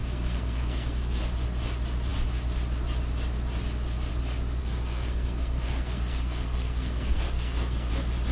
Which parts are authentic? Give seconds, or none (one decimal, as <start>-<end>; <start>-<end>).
1.2-4.6; 7.9-8.3